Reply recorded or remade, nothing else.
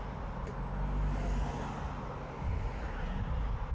recorded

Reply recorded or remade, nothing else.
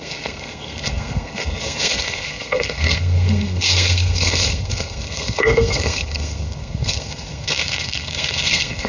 remade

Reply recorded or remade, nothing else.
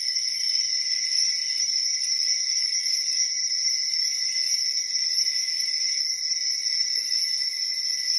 recorded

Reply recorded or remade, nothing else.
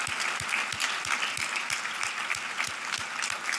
recorded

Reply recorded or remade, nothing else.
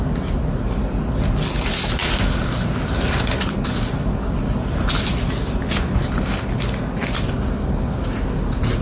recorded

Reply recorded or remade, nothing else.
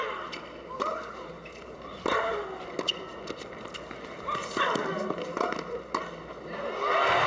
recorded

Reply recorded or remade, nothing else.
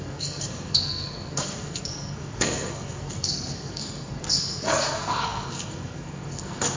remade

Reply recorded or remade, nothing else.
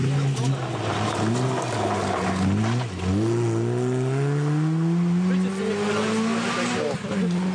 recorded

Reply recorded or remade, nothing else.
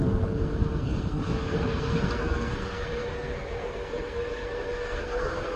remade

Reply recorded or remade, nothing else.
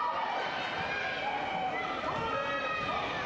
recorded